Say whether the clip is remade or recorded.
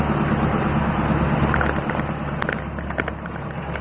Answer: recorded